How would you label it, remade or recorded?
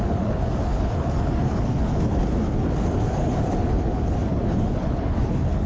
remade